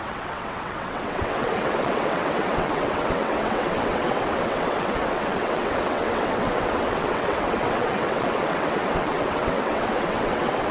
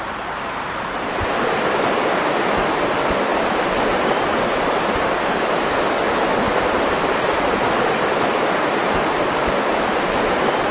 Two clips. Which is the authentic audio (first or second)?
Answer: second